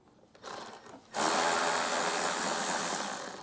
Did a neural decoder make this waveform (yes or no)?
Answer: no